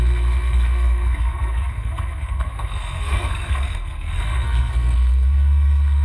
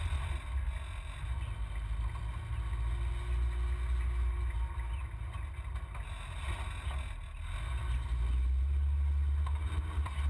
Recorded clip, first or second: second